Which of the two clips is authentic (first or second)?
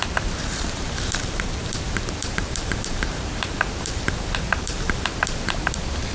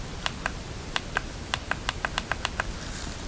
second